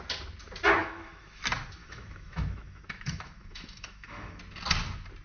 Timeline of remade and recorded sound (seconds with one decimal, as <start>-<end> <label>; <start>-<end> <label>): 0.0-0.8 recorded; 0.8-1.4 remade; 1.4-1.8 recorded; 1.8-4.4 remade; 4.4-5.2 recorded